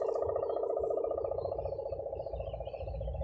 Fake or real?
real